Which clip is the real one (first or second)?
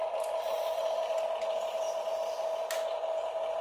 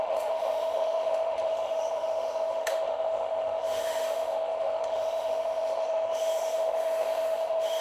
first